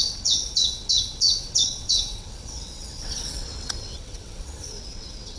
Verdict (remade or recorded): remade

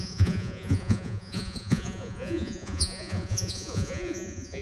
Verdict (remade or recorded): remade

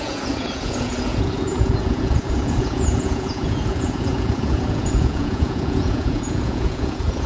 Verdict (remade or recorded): remade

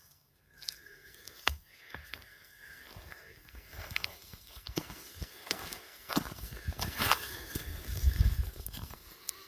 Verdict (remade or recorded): remade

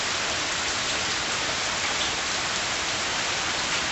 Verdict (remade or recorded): recorded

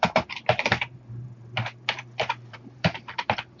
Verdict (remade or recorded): remade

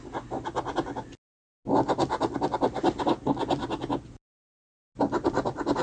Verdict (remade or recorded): recorded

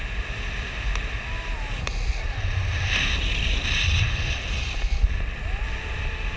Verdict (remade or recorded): recorded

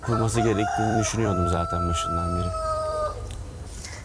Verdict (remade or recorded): remade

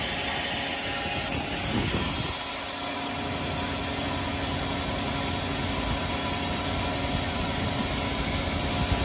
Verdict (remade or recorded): recorded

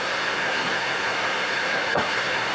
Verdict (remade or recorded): remade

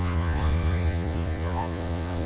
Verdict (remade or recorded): remade